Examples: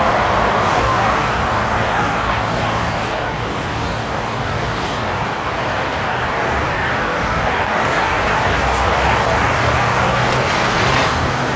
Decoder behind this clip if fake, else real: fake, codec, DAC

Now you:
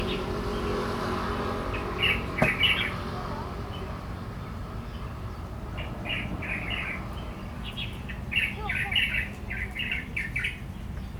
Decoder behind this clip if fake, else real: real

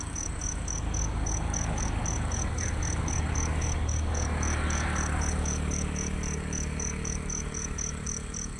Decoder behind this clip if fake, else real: fake, codec, DAC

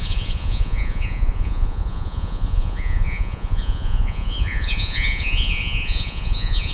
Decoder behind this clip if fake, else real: fake, vocoder, Vocos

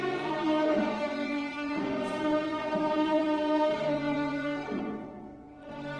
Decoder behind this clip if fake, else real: fake, vocoder, Vocos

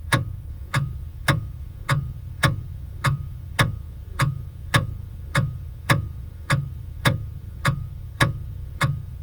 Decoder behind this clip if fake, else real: fake, vocoder, Vocos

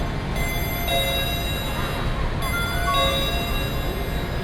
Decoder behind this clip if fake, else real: real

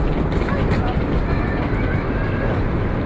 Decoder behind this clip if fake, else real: real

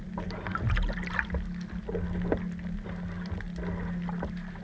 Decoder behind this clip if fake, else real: real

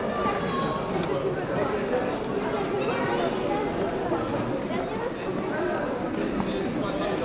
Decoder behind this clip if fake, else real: real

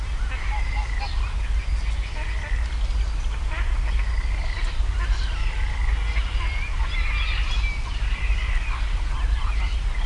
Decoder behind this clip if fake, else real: real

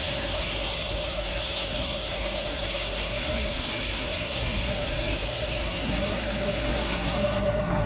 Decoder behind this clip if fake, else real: fake, codec, SNAC